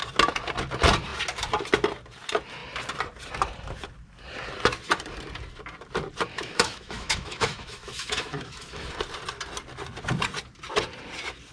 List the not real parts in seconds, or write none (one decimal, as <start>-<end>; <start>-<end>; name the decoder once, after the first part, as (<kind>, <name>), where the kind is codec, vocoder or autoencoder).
6.3-8.9 (autoencoder, DAC-VAE)